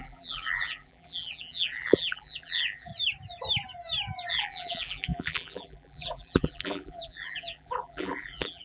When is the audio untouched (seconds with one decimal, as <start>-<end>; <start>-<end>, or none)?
2.9-4.3